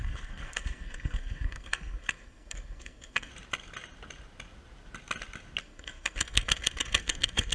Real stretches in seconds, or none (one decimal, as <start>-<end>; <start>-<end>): 3.3-5.6